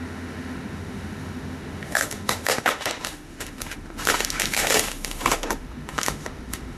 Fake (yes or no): yes